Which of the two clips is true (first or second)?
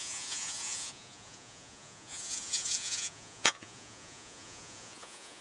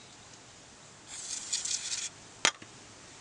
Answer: second